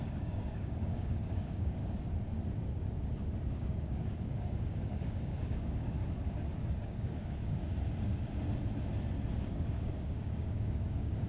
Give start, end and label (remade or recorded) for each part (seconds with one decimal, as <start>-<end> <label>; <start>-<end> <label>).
0.0-1.8 remade; 1.8-3.5 recorded; 3.5-6.0 remade; 6.0-6.7 recorded; 6.7-7.6 remade; 7.6-9.3 recorded; 9.3-11.3 remade